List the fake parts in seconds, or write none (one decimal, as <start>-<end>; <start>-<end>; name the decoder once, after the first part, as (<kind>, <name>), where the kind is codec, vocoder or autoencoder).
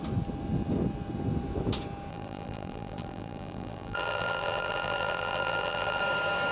2.1-6.0 (vocoder, BigVGAN v2)